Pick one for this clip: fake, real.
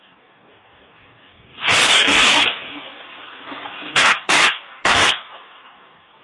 fake